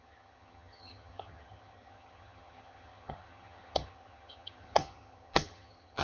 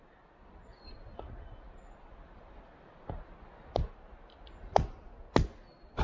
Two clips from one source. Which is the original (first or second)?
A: second